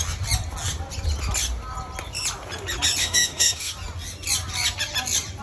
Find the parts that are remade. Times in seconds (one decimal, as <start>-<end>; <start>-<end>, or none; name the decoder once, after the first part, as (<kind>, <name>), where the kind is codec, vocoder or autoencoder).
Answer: 3.0-3.7 (autoencoder, DAC-VAE)